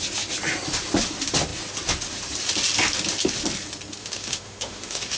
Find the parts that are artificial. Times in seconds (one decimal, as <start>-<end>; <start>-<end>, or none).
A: 4.0-5.2